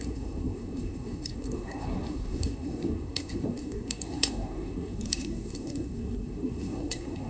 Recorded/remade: remade